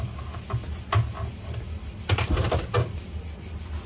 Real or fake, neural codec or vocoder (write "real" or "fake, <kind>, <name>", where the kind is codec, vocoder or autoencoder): real